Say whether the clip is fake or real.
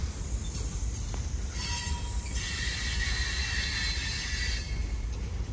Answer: real